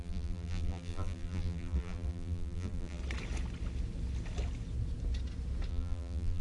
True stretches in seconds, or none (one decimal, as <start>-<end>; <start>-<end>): 3.0-5.7